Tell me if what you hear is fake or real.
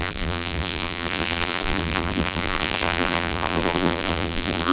fake